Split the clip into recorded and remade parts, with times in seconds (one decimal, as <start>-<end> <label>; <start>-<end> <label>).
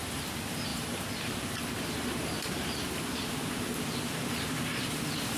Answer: 0.0-0.7 recorded; 0.7-3.9 remade; 3.9-4.7 recorded; 4.7-5.4 remade